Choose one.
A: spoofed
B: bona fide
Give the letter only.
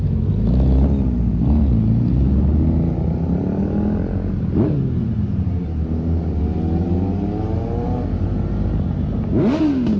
B